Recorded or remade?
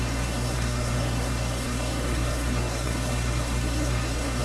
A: remade